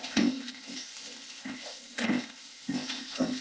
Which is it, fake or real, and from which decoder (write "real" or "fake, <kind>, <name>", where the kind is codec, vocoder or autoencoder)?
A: fake, codec, ZipCodec